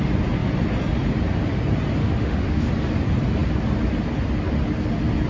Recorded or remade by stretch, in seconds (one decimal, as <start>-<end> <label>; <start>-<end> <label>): 0.0-2.0 recorded; 2.0-2.7 remade; 2.7-5.3 recorded